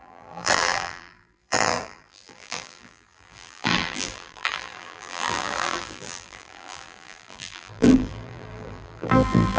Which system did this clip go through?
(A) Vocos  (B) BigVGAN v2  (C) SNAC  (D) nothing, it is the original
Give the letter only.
B